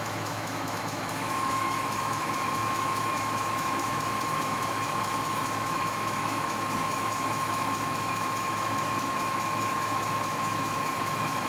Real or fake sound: fake